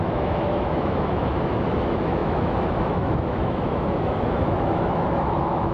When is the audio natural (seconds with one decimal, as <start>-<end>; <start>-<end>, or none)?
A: none